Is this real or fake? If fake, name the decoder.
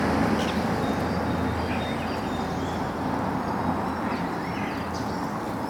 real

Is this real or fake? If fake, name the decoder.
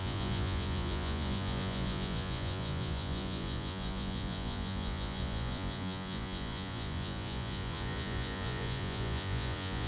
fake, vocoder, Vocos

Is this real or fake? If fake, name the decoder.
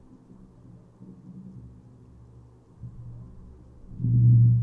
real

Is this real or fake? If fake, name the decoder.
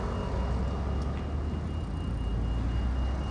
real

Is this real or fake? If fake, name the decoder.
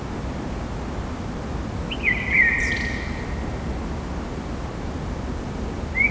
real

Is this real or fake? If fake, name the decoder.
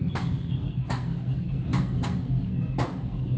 fake, codec, SNAC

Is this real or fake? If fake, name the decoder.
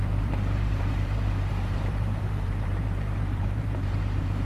fake, vocoder, BigVGAN v2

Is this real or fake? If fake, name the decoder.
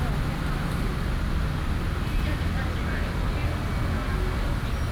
real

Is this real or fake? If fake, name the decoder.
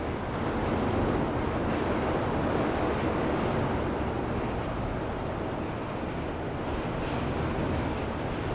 real